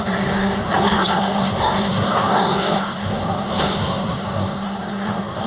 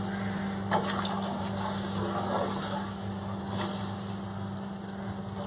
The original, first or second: second